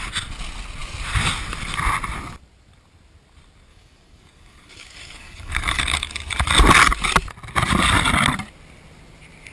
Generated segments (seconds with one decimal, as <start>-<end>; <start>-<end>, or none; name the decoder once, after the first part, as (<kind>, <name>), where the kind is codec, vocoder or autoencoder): 3.7-6.5 (codec, DAC)